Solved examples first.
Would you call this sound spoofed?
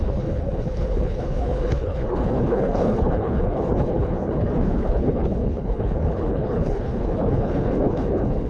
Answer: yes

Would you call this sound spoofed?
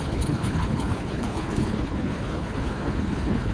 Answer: yes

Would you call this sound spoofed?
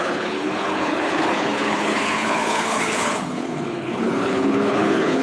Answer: yes